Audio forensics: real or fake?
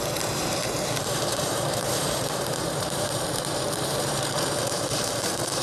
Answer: fake